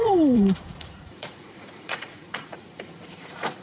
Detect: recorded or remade remade